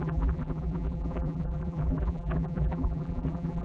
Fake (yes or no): yes